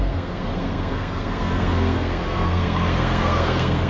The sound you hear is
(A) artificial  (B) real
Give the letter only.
A